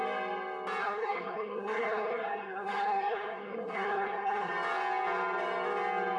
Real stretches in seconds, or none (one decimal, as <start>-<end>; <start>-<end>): 0.0-0.8; 4.5-6.2